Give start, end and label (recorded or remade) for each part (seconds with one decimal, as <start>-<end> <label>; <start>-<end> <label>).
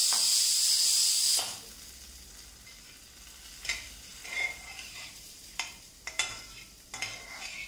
0.0-4.1 recorded; 4.1-6.4 remade; 6.4-7.7 recorded